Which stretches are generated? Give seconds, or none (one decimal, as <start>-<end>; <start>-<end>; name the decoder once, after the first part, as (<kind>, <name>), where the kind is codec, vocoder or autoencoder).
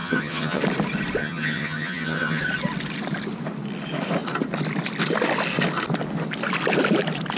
0.0-0.6 (vocoder, HiFi-GAN); 1.2-2.4